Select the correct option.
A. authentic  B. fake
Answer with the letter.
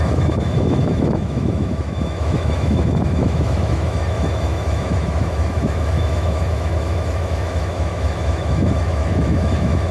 B